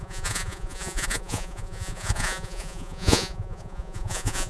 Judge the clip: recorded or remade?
remade